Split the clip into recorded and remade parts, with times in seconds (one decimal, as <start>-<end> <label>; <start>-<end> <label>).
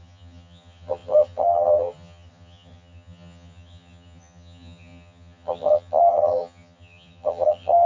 0.0-7.9 remade